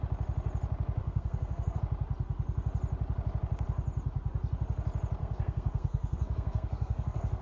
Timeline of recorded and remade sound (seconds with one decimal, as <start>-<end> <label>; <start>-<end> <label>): 0.0-1.0 recorded; 1.0-1.8 remade; 1.8-5.2 recorded; 5.2-7.4 remade